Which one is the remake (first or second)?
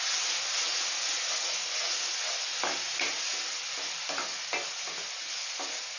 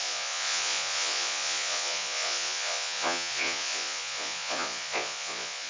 second